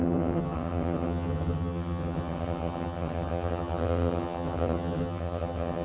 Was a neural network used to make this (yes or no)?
yes